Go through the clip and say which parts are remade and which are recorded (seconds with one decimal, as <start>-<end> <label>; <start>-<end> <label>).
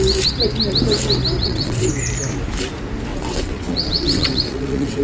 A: 0.0-1.4 recorded; 1.4-1.9 remade; 1.9-3.1 recorded; 3.1-5.0 remade